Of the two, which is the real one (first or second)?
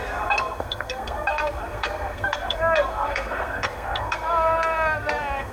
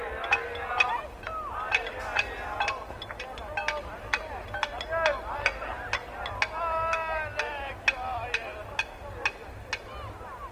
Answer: second